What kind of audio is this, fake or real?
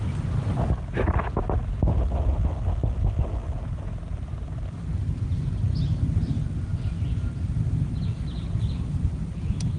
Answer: real